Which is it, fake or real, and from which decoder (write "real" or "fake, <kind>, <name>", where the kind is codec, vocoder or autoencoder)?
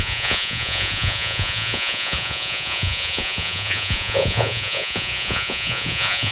fake, vocoder, Vocos